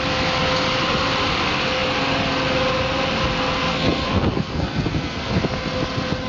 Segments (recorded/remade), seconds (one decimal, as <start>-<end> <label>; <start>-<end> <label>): 0.0-3.7 recorded; 3.7-5.4 remade; 5.4-6.3 recorded